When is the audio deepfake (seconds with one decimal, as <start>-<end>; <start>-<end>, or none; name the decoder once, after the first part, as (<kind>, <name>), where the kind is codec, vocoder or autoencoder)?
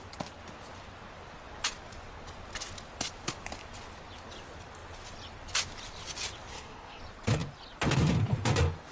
6.5-7.0 (codec, SNAC)